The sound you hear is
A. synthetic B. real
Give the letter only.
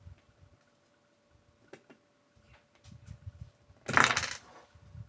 B